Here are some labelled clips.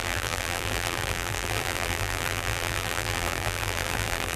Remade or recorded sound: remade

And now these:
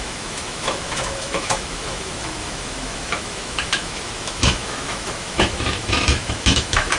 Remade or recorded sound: remade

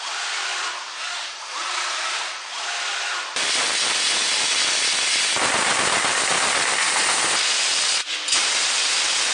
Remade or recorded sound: recorded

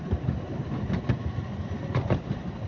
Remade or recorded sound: recorded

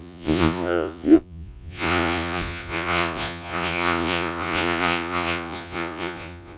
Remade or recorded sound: remade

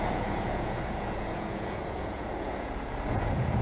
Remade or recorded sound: remade